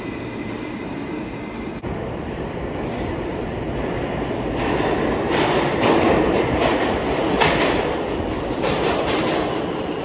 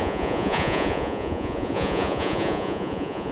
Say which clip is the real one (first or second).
first